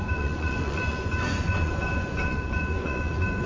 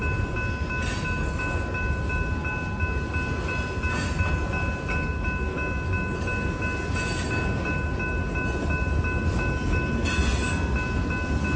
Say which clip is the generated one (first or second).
first